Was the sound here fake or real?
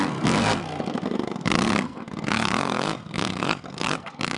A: fake